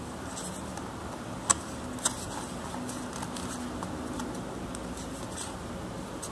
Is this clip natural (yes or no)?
yes